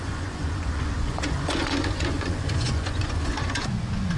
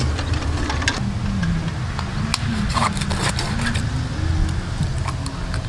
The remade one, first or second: first